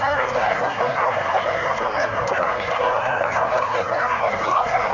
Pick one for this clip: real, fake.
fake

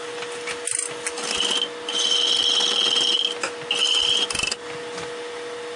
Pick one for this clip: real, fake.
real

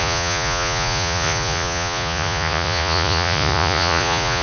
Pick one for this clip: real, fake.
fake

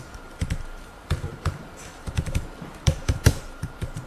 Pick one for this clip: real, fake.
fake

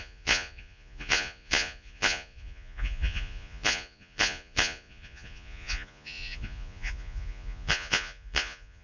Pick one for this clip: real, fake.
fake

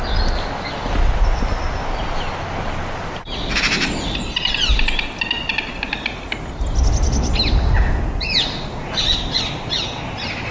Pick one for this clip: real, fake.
real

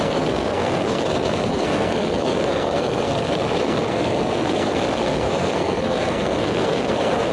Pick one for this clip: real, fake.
fake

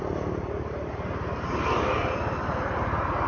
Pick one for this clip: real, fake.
real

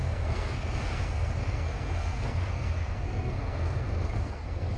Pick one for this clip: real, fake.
fake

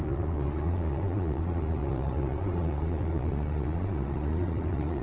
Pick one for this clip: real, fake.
fake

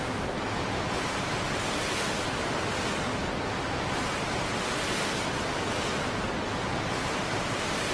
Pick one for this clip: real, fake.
real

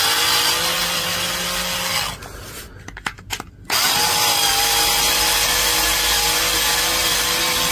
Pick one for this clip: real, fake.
real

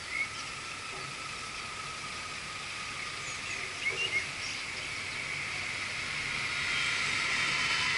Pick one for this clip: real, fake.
real